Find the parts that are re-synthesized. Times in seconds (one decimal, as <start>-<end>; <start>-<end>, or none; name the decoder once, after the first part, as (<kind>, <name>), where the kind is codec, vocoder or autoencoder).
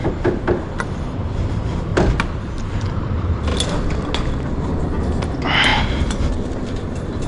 0.0-1.9 (vocoder, BigVGAN v2); 2.6-3.5; 5.0-5.7; 6.7-7.3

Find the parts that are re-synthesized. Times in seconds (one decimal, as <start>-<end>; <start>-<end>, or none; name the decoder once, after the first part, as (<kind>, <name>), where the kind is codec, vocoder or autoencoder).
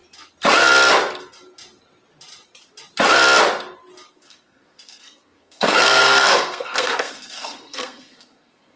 4.1-8.8 (codec, SNAC)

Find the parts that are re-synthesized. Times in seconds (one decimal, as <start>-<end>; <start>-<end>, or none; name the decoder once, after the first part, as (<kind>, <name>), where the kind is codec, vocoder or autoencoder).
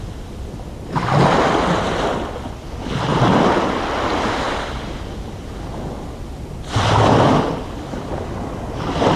none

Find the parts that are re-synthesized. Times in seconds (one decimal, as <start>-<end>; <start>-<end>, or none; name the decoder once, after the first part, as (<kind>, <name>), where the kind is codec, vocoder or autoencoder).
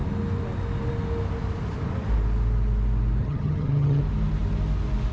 3.2-4.0 (vocoder, HiFi-GAN)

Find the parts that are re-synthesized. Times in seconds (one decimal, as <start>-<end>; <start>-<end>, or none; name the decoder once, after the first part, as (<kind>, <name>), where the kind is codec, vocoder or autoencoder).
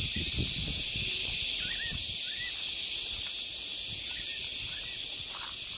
none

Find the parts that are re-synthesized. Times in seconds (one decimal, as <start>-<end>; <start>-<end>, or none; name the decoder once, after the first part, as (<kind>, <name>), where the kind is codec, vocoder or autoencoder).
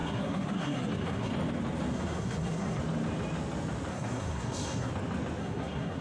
0.0-1.3 (codec, SNAC); 1.9-2.8; 3.9-4.9; 5.4-6.0